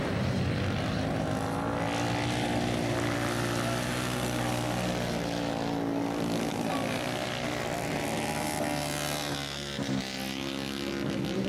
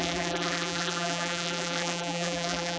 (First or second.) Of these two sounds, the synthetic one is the second